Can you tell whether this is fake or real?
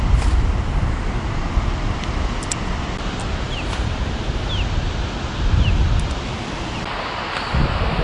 real